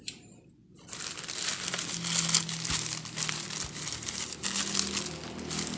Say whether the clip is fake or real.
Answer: real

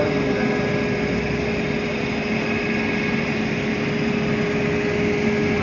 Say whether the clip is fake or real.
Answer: real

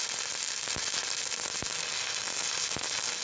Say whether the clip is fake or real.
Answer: real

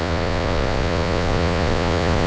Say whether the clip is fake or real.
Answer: fake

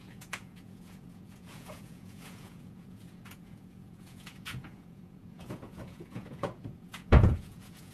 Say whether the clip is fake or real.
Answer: fake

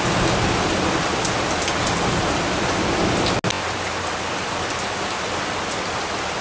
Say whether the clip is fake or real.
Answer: real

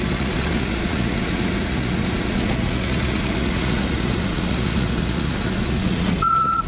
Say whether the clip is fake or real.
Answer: fake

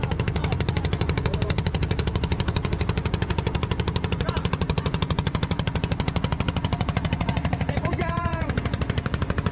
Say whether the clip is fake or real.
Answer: fake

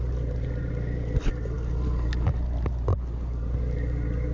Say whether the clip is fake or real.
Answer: real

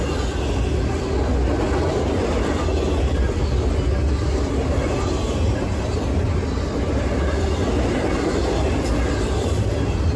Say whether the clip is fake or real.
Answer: real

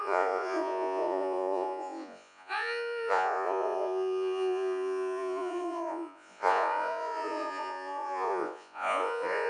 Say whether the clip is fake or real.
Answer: fake